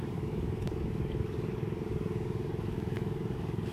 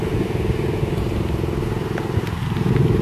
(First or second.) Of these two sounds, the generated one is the first